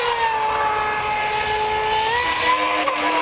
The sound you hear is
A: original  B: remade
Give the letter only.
A